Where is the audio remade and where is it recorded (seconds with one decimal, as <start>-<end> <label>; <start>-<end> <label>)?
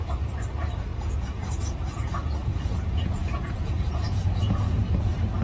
0.0-0.9 recorded; 0.9-1.4 remade; 1.4-2.4 recorded; 2.4-4.8 remade; 4.8-5.4 recorded